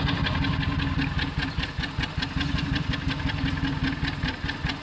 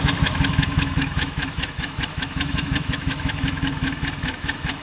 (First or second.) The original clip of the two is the first